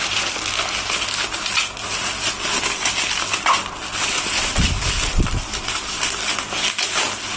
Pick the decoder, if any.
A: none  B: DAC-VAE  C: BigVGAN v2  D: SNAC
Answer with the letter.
A